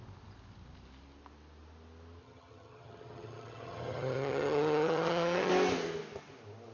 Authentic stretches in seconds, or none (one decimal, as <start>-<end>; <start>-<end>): 0.0-2.2; 5.5-6.7